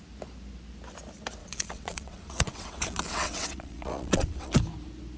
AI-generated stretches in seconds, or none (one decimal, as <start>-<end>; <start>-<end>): 1.4-4.5